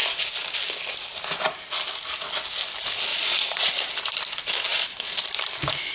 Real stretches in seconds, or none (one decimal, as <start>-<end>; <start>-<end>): 0.0-3.1; 3.7-4.7; 5.2-5.9